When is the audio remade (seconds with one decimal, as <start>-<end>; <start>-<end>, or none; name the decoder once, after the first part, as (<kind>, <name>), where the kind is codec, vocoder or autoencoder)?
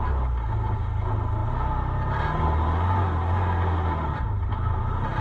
none